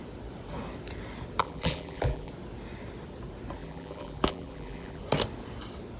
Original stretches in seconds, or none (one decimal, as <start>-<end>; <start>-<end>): 0.0-1.4; 2.3-3.6; 5.0-6.0